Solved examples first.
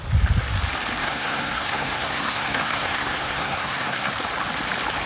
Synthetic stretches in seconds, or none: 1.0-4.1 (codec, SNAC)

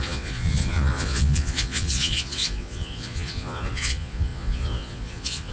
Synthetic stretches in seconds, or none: 0.0-5.5 (vocoder, Vocos)

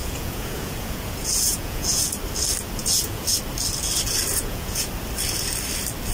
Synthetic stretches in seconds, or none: 0.0-2.0 (vocoder, Vocos); 2.8-3.4; 4.3-4.9

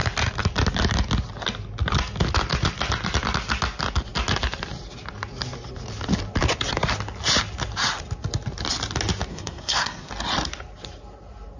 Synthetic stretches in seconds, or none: 9.3-10.1 (codec, SNAC)

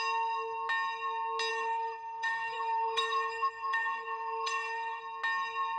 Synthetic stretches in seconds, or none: 1.5-5.0 (codec, SNAC)

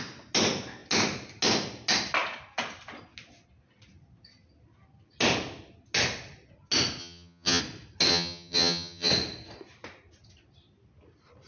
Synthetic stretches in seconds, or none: 7.0-7.6 (vocoder, HiFi-GAN); 8.1-9.1